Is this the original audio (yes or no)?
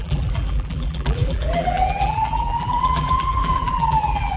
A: no